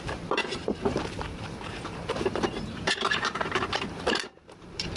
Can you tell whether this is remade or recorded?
remade